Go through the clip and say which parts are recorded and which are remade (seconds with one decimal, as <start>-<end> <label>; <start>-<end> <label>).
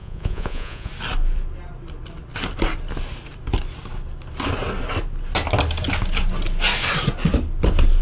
0.0-0.9 remade; 0.9-8.0 recorded